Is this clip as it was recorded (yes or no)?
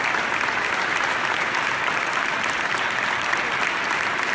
yes